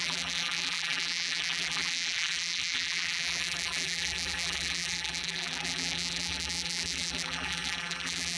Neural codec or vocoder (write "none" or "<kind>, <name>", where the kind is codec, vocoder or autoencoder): vocoder, BigVGAN v2